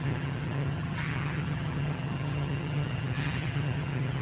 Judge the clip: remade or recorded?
remade